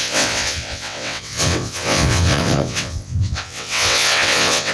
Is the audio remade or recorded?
remade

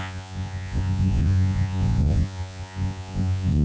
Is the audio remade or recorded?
remade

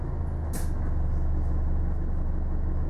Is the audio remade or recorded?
recorded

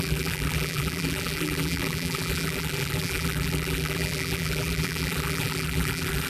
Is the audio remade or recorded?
remade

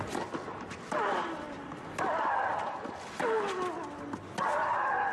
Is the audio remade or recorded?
recorded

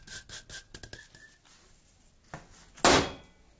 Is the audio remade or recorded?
recorded